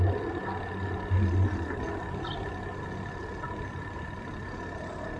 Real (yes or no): yes